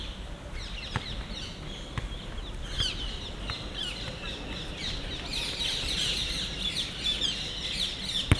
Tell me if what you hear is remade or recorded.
recorded